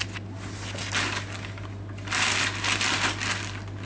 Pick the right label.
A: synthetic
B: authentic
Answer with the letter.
B